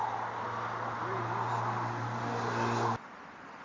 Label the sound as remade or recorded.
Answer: recorded